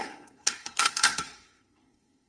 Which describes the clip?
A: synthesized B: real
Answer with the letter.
A